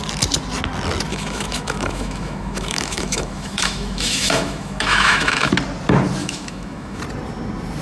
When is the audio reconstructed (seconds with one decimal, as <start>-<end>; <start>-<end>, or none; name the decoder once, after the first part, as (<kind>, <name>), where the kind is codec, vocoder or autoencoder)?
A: 1.1-5.5 (autoencoder, DAC-VAE); 6.2-7.0